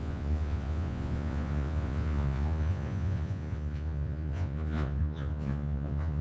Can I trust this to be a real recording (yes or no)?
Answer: no